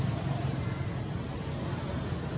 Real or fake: real